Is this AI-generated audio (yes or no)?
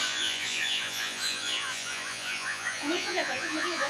yes